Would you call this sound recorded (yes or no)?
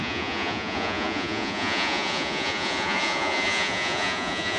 no